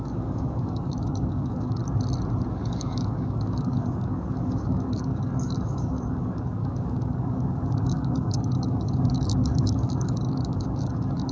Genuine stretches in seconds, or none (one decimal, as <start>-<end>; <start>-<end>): 1.8-2.5